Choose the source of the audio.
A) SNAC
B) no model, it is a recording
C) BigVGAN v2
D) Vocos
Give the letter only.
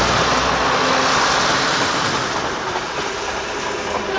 B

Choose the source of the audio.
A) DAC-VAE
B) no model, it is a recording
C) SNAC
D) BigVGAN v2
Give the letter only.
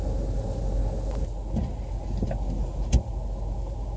B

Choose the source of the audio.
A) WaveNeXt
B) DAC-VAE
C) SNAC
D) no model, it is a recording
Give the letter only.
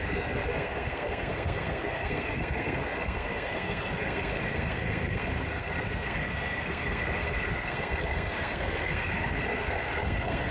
C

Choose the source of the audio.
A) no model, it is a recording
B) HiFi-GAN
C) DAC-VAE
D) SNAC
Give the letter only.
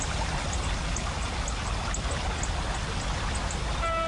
A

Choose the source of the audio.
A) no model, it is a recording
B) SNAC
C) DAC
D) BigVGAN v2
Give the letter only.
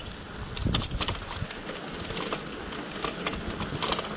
A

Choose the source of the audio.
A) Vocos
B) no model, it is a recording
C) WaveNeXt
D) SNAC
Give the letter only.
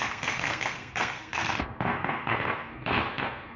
D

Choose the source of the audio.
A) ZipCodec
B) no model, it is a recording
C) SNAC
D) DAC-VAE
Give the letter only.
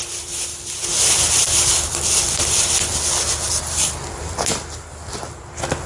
B